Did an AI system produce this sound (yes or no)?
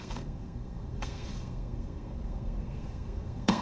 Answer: yes